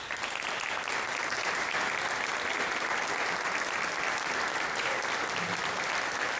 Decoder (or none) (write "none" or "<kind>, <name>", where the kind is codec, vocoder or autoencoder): none